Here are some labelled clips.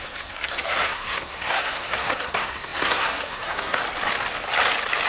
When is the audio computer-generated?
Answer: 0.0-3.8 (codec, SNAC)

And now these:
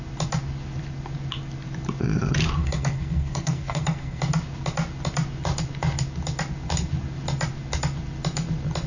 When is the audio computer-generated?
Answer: 2.6-4.2 (codec, SNAC)

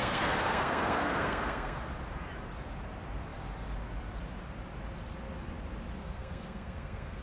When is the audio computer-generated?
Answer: 0.0-1.8 (codec, SNAC); 6.0-7.2

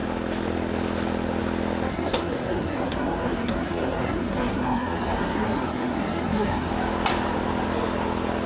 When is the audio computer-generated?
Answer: 1.9-6.7 (codec, SNAC)

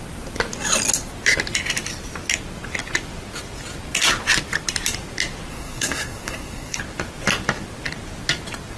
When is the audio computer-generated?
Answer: 5.5-6.8 (codec, SNAC)